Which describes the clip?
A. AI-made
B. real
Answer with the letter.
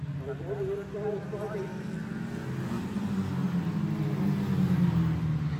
B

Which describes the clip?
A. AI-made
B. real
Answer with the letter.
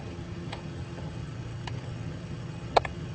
A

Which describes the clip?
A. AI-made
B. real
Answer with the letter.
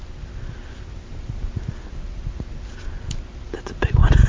B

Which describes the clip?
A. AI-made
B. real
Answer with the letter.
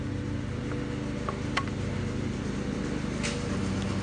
B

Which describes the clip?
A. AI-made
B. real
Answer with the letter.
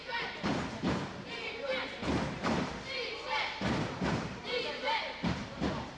A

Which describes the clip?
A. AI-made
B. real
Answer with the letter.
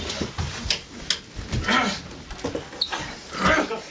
B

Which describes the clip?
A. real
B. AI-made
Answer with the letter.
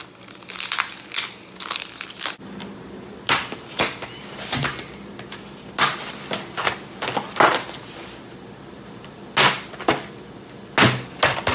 A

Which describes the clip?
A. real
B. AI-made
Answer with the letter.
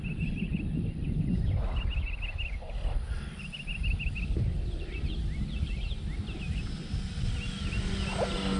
A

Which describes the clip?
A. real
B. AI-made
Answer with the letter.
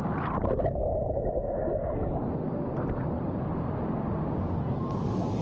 A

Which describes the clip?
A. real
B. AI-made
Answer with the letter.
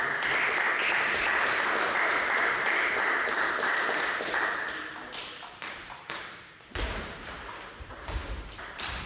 B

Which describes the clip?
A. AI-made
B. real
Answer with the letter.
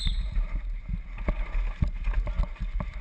B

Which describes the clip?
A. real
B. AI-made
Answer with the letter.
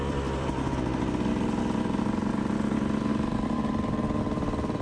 B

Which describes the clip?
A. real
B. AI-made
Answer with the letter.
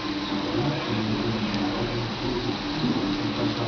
A